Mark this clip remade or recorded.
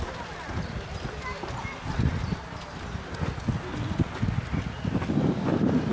recorded